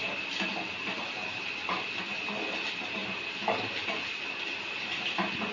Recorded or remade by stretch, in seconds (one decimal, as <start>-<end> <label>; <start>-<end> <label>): 0.0-3.0 recorded; 3.0-4.3 remade; 4.3-5.5 recorded